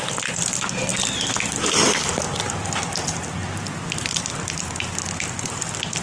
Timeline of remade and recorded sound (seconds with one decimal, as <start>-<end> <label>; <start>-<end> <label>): 0.0-6.0 recorded